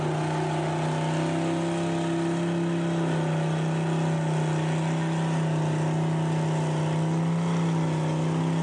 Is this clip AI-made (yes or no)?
no